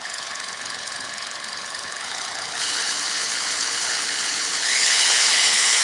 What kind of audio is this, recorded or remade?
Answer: remade